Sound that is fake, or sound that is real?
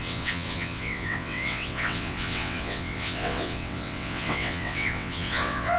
fake